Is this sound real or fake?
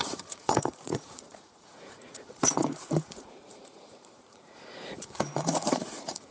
fake